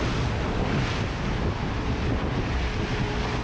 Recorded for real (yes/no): yes